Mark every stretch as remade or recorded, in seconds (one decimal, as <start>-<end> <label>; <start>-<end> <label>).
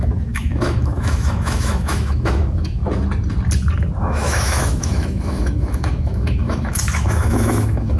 0.0-2.8 remade; 2.8-4.0 recorded; 4.0-8.0 remade